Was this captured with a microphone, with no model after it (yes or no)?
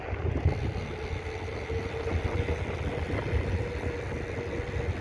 yes